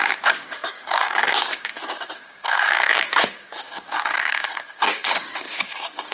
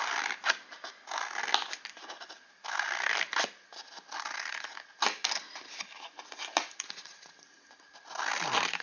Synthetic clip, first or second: first